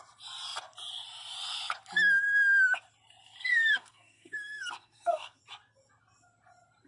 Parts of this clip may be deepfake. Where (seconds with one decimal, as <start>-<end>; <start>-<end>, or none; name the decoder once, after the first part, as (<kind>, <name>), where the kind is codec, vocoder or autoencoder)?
3.4-5.4 (codec, SNAC)